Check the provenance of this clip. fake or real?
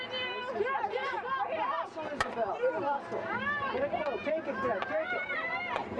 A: real